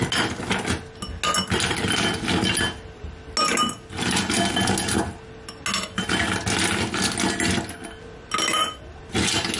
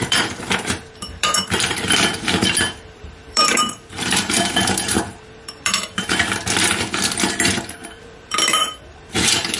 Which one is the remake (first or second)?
second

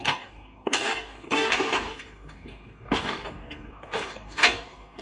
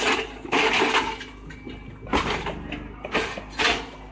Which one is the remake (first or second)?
first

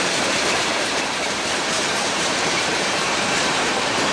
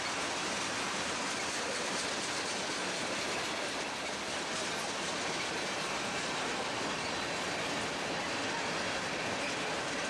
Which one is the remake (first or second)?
first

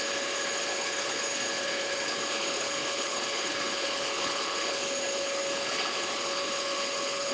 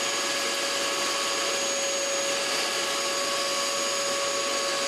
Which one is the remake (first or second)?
first